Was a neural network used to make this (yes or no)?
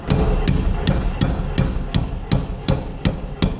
no